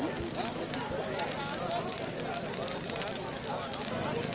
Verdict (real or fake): real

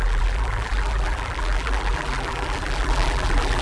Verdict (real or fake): fake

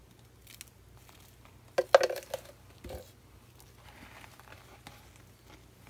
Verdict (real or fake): real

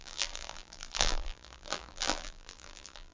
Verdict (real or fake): fake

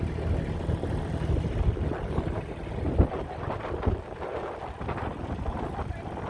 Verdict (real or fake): real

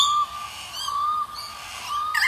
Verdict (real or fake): real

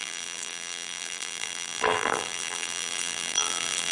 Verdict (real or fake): fake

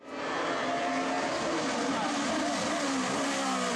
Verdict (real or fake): real